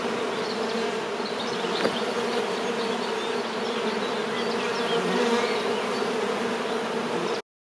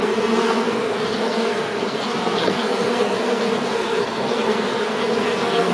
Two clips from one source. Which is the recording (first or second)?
first